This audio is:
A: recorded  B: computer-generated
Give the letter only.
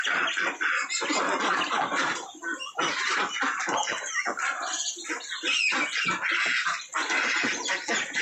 A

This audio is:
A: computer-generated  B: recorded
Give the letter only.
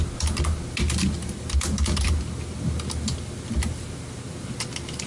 B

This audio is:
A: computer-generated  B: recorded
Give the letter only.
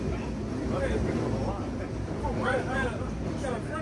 B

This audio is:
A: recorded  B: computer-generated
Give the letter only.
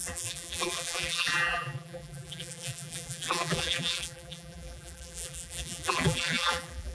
B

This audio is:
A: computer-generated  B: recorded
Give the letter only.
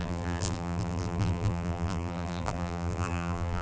A